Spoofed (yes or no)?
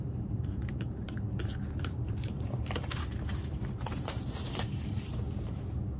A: yes